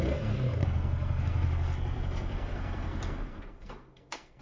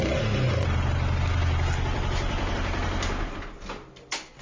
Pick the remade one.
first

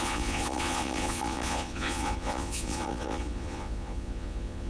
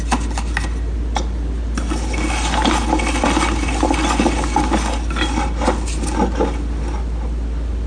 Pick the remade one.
first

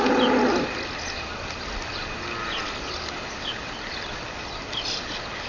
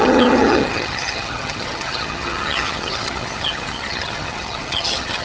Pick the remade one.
second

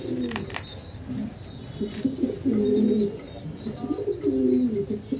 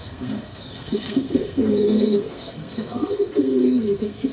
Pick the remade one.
second